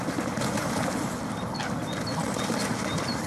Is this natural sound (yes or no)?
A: yes